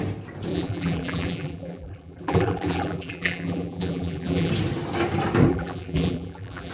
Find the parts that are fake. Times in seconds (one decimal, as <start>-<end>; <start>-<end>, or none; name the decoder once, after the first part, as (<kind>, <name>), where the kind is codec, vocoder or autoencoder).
0.5-4.5 (vocoder, BigVGAN v2); 5.5-6.7